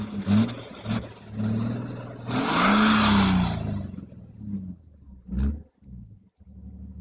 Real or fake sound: real